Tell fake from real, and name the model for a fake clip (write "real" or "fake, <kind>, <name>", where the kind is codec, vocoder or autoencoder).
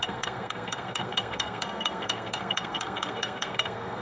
fake, codec, SNAC